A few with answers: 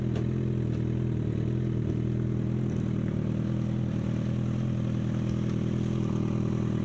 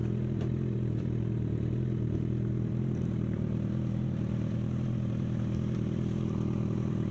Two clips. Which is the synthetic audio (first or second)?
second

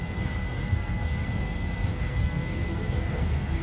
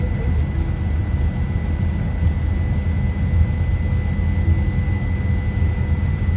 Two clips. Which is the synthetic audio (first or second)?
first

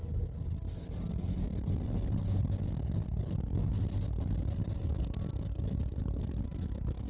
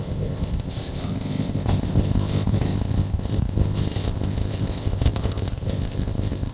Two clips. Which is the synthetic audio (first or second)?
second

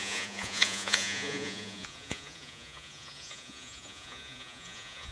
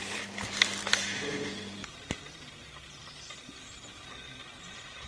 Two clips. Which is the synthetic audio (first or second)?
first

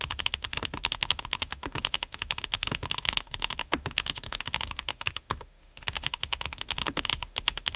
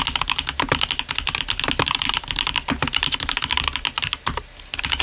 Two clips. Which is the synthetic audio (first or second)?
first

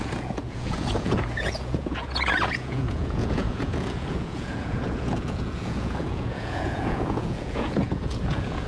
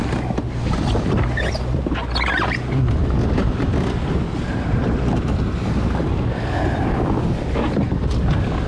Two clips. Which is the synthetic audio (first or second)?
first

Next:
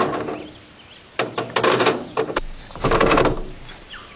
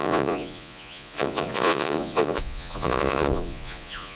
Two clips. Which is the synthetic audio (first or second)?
second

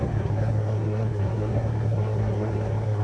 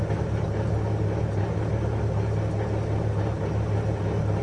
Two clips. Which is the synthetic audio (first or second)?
first